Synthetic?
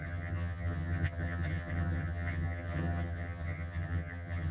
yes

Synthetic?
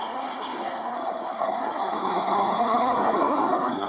yes